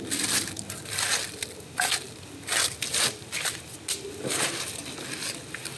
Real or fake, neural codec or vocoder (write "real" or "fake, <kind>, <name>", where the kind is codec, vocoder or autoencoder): real